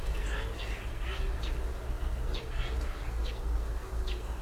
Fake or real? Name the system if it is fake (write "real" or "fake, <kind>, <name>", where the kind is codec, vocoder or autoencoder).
fake, codec, SNAC